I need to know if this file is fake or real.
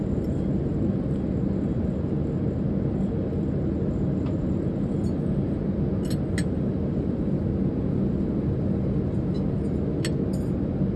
real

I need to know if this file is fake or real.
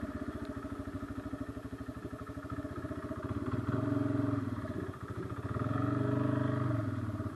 real